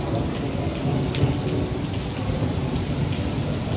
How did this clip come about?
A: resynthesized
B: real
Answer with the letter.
B